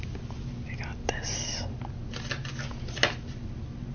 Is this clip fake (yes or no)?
no